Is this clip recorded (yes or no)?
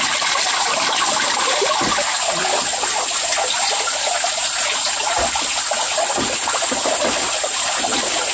yes